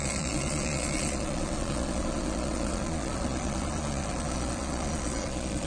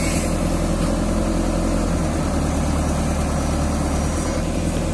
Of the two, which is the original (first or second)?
second